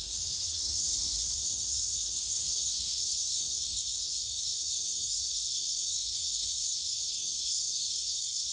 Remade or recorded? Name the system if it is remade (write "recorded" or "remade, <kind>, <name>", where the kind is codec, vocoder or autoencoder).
remade, codec, SNAC